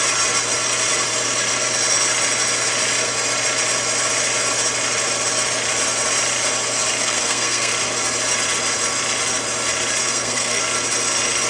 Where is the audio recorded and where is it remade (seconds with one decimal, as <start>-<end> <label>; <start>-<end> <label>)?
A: 0.0-7.0 recorded; 7.0-7.7 remade; 7.7-10.0 recorded; 10.0-10.6 remade; 10.6-11.5 recorded